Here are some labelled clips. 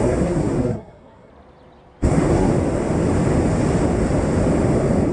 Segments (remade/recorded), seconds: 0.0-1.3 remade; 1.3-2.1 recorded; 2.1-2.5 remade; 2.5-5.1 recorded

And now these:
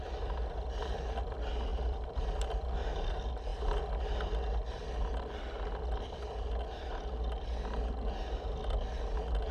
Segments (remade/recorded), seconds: 0.0-1.7 recorded; 1.7-2.2 remade; 2.2-9.5 recorded

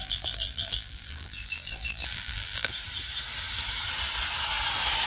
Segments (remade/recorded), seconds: 0.0-2.7 remade; 2.7-5.1 recorded

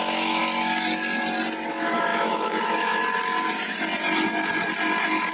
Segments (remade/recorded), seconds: 0.0-0.4 remade; 0.4-1.7 recorded; 1.7-3.0 remade; 3.0-5.3 recorded

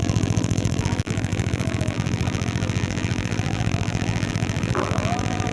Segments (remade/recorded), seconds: 0.0-5.5 remade

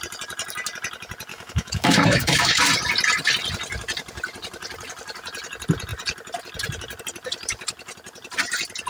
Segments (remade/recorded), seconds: 0.0-1.3 recorded; 1.3-2.6 remade; 2.6-8.9 recorded

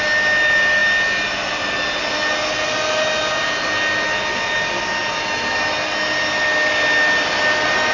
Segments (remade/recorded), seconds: 0.0-7.9 recorded